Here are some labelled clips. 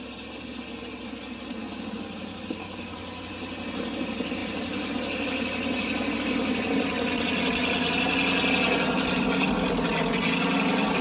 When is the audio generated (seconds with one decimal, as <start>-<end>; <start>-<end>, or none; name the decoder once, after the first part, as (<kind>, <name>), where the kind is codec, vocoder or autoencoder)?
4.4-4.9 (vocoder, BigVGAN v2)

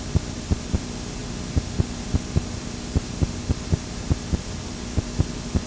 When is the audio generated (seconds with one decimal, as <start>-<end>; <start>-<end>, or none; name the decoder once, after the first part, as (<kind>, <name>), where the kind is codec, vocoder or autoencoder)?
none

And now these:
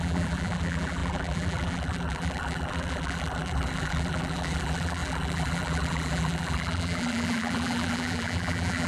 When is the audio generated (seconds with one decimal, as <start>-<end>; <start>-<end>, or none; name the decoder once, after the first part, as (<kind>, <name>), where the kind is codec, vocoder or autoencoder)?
0.0-8.9 (vocoder, BigVGAN v2)

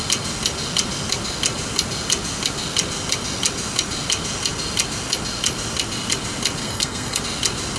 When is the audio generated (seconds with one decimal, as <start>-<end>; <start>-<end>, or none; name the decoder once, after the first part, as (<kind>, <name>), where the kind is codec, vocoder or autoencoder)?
6.6-7.2 (codec, SNAC)

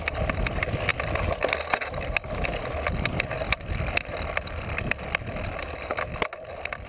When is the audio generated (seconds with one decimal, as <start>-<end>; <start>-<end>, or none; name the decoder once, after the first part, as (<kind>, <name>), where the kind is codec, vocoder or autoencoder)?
none

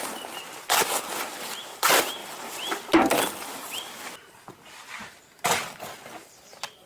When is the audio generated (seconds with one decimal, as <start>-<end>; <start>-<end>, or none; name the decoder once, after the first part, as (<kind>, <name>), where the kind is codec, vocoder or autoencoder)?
2.2-3.8 (vocoder, BigVGAN v2)

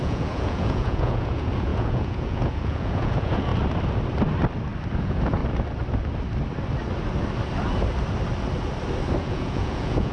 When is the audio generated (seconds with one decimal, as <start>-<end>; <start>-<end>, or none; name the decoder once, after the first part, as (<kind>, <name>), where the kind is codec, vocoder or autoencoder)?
0.0-3.5 (vocoder, Vocos); 5.0-5.4; 9.2-10.1

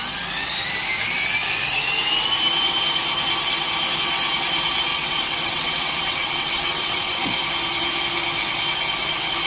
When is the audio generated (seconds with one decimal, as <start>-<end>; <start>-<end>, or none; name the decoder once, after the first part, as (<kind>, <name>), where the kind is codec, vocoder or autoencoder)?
4.9-7.3 (vocoder, WaveNeXt)